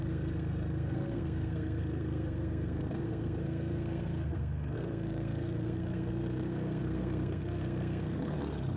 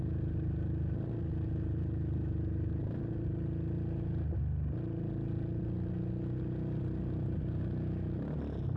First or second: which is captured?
second